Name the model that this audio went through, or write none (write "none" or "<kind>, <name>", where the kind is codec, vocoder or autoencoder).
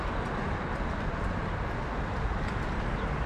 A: none